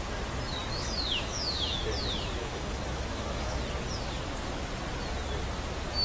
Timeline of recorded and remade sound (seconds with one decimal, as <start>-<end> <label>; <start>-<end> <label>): 0.0-0.6 recorded; 0.6-1.8 remade; 1.8-2.4 recorded; 2.4-3.6 remade; 3.6-6.0 recorded